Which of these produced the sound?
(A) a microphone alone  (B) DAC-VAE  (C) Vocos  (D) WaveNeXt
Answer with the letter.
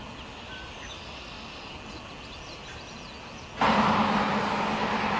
A